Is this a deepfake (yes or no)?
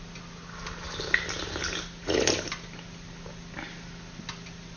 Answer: no